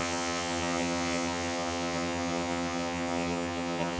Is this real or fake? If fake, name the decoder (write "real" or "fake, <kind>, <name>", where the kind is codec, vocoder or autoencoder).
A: fake, vocoder, HiFi-GAN